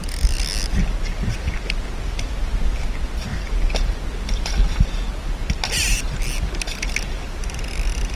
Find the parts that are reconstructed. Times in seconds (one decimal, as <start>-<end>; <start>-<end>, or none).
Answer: none